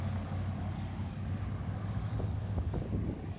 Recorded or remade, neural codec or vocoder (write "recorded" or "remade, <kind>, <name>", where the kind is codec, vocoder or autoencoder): remade, codec, DAC